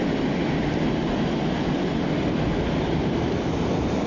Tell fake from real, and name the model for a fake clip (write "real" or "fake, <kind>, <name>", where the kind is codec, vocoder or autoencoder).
real